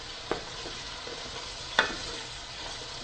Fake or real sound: fake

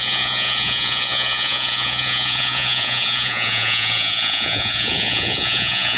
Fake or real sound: fake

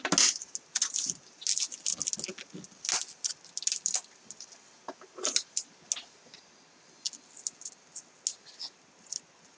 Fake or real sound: real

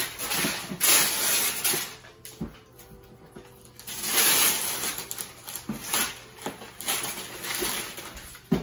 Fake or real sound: real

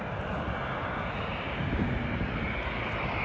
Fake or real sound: real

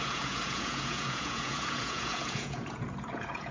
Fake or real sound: fake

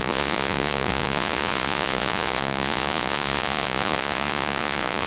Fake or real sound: fake